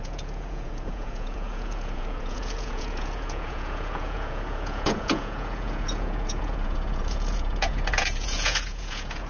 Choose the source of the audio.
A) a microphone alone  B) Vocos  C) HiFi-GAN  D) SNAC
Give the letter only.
B